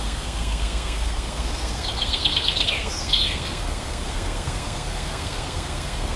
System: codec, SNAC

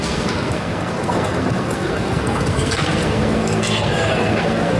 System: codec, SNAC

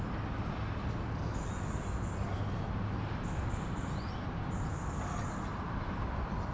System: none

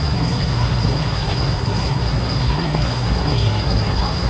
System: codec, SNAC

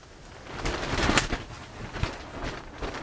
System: none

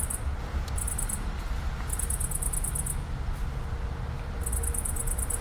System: none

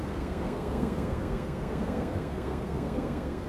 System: codec, SNAC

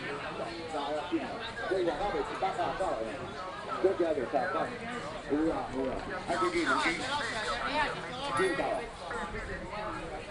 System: none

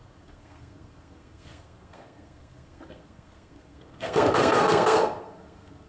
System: codec, SNAC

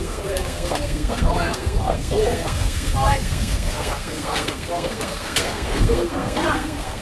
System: codec, SNAC